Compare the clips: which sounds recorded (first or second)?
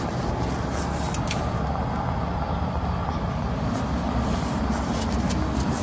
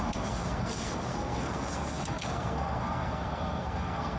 first